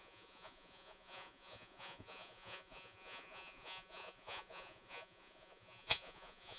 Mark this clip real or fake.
fake